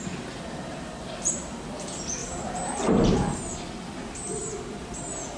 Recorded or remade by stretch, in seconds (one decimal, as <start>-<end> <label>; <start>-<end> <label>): 0.0-2.2 recorded; 2.2-3.1 remade; 3.1-5.4 recorded